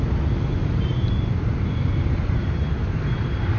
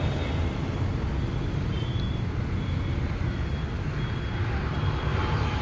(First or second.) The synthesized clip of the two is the first